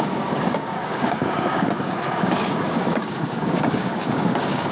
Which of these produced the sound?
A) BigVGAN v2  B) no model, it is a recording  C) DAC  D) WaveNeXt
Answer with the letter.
C